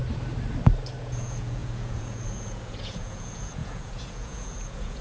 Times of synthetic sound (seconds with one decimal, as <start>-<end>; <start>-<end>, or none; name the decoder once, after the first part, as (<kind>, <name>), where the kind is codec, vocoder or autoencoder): 1.0-5.0 (vocoder, Vocos)